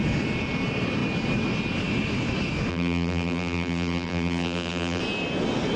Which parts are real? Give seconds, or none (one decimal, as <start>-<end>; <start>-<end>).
0.0-2.7; 5.0-5.8